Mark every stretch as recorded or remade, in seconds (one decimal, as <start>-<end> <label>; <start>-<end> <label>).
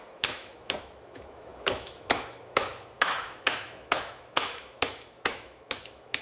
0.0-6.2 remade